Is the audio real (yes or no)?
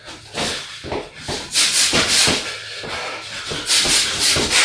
yes